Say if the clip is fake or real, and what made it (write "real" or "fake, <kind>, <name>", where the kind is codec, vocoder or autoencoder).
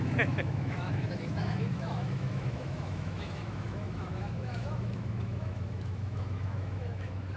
fake, autoencoder, DAC-VAE